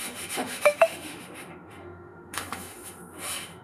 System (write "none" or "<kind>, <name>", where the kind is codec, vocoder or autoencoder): autoencoder, DAC-VAE